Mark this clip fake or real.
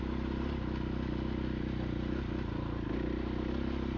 real